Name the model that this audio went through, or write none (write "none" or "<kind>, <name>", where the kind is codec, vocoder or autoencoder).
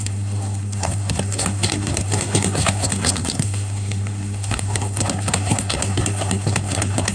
codec, SNAC